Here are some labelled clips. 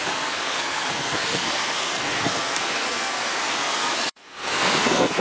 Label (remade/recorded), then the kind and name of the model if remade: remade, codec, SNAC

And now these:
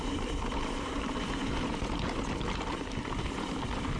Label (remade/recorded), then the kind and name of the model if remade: remade, vocoder, BigVGAN v2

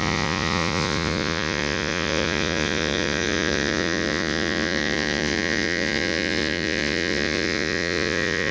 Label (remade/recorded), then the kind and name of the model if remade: remade, vocoder, Vocos